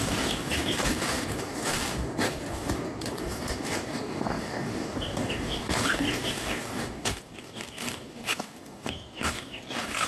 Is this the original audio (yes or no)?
no